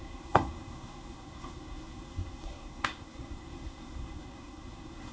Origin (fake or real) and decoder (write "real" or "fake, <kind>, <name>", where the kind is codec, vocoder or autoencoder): fake, codec, SNAC